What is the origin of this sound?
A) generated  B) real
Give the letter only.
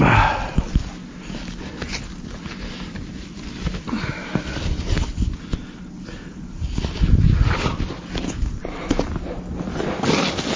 B